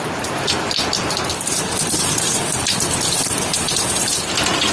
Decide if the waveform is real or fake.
real